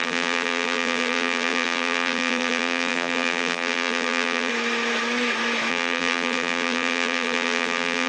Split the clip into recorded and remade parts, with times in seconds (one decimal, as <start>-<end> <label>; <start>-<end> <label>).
0.0-4.5 remade; 4.5-5.7 recorded; 5.7-8.1 remade